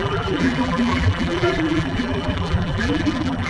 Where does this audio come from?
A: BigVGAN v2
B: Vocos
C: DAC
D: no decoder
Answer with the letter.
A